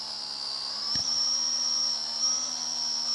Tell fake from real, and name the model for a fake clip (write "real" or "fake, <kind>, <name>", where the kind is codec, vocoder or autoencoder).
real